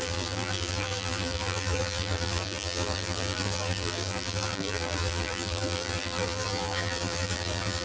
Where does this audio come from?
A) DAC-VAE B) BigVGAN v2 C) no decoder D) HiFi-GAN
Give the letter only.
B